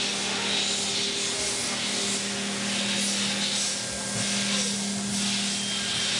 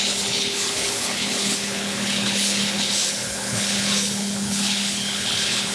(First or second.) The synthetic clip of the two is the second